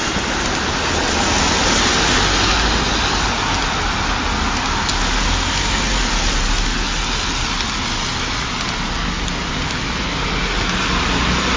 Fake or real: real